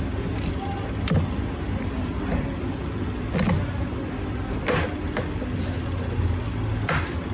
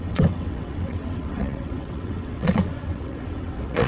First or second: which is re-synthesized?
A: second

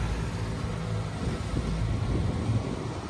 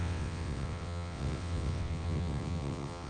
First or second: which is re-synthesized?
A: second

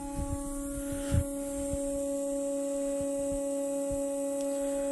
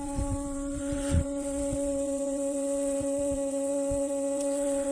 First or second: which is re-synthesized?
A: second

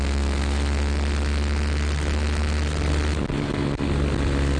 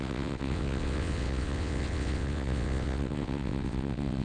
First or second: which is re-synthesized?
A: second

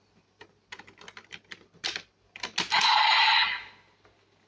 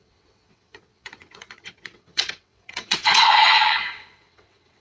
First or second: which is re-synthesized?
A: second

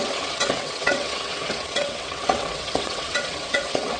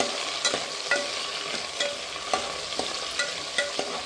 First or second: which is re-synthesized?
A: first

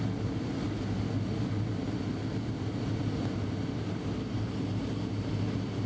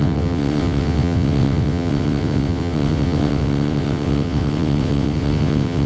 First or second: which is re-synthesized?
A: second